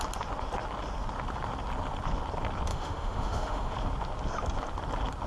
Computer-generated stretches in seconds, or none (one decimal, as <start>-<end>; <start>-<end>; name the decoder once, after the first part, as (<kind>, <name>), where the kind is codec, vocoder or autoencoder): 2.7-3.7 (autoencoder, DAC-VAE)